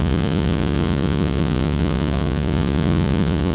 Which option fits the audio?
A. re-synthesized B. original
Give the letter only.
A